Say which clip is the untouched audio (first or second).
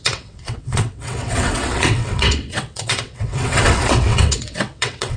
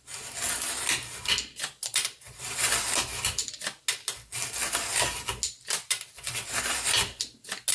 second